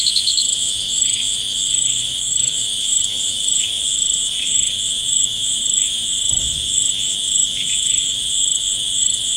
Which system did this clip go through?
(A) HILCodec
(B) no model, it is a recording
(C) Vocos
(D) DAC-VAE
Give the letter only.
D